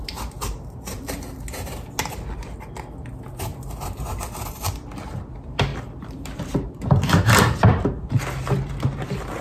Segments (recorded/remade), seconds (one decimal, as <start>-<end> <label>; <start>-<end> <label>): 0.0-5.7 recorded; 5.7-6.2 remade; 6.2-9.4 recorded